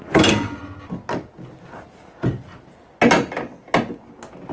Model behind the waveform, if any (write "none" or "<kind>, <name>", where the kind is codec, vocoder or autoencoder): none